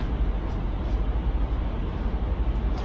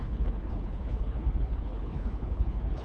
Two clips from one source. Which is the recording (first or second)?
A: first